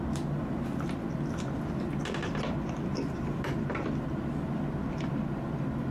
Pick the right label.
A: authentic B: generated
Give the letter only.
A